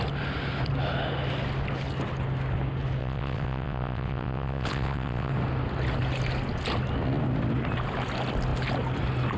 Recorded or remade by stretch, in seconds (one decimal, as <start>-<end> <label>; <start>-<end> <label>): 0.0-3.0 recorded; 3.0-5.3 remade; 5.3-9.4 recorded